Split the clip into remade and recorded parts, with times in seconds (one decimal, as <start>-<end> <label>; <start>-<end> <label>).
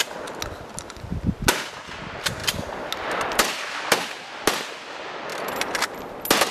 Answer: 0.0-6.5 recorded